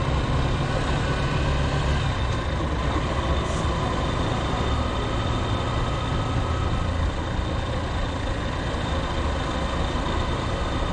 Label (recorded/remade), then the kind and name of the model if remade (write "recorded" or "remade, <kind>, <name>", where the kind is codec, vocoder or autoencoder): recorded